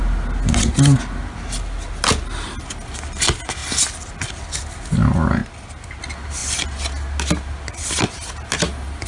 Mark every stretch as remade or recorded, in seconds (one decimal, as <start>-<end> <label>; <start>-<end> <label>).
0.0-9.1 recorded